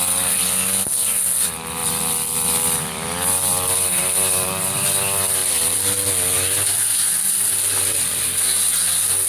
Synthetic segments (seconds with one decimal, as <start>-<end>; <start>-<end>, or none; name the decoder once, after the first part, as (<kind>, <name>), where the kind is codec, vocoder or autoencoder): 5.4-8.2 (vocoder, BigVGAN v2)